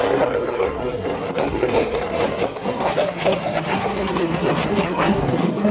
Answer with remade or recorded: remade